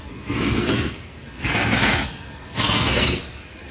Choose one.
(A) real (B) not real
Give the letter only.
B